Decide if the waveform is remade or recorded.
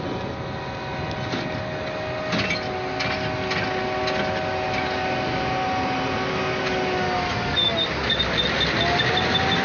recorded